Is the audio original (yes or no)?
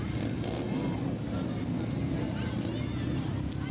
yes